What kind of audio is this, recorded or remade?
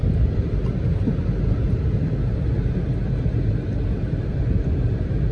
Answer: remade